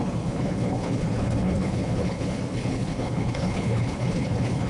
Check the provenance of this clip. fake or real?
fake